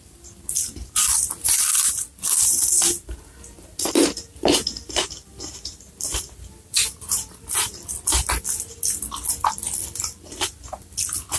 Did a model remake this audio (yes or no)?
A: yes